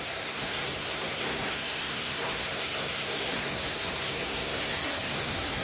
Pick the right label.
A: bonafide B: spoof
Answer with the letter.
B